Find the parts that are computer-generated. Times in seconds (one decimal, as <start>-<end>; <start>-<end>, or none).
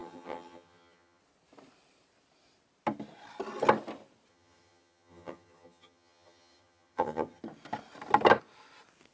0.0-1.2; 4.3-7.4